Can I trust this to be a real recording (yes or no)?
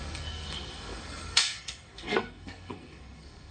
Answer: no